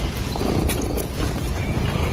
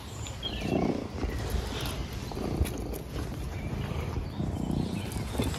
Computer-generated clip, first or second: first